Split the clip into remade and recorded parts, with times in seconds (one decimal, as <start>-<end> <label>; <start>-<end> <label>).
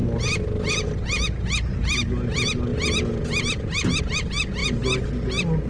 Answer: 0.0-5.7 recorded